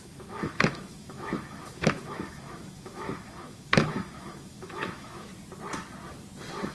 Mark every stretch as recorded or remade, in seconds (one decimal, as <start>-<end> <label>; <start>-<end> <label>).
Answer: 0.0-5.3 remade; 5.3-6.7 recorded